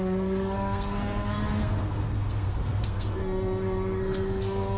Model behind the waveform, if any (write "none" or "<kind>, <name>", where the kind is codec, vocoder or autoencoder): codec, SNAC